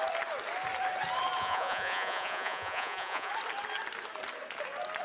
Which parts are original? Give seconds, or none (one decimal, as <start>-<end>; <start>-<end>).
0.0-1.4; 3.3-5.0